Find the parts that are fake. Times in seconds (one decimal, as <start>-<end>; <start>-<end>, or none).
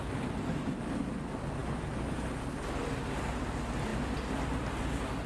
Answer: none